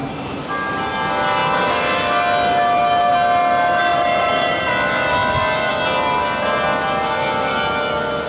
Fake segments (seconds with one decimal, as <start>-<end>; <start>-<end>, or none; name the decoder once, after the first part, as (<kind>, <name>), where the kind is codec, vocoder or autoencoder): 0.0-0.5 (vocoder, BigVGAN v2); 3.9-4.7